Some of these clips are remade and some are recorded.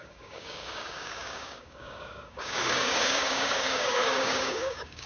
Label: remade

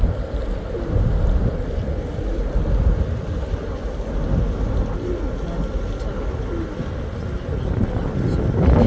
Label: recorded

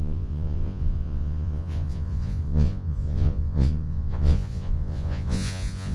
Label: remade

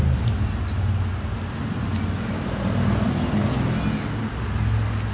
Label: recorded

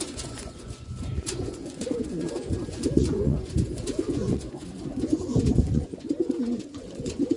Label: remade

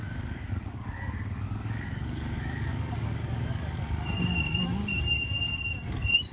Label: remade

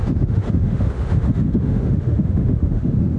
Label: remade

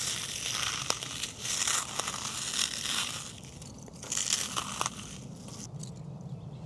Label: recorded